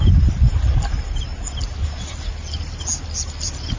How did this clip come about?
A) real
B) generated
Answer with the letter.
A